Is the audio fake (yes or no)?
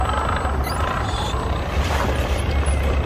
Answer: no